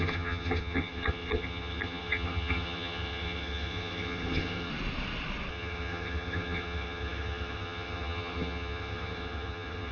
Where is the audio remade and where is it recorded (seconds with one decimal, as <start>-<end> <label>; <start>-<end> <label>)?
0.0-4.7 remade; 4.7-5.5 recorded; 5.5-9.9 remade